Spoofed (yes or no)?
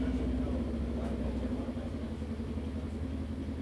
no